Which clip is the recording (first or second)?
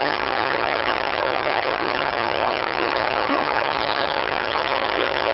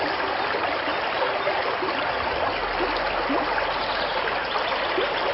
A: second